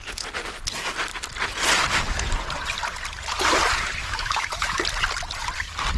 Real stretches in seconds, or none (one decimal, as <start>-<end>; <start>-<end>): 0.0-4.0; 4.8-6.0